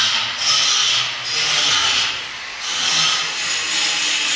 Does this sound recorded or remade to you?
recorded